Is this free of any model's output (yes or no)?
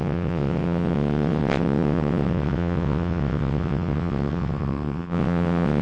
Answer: no